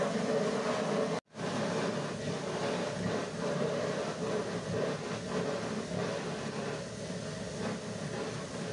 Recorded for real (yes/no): yes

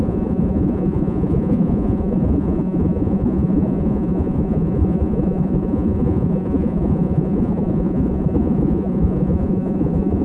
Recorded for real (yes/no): no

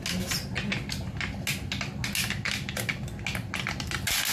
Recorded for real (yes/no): yes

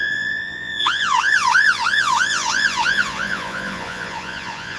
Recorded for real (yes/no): no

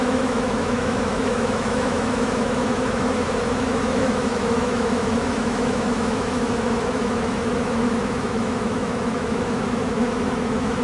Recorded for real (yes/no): no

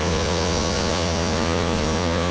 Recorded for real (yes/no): no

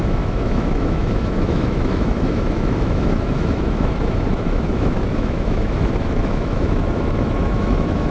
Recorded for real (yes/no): no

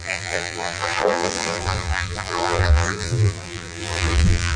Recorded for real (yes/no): no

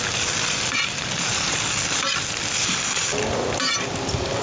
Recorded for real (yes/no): yes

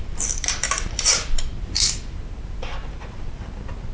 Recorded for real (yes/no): yes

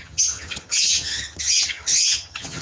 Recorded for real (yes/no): no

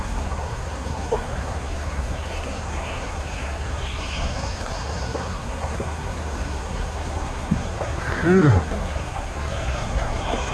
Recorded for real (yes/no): no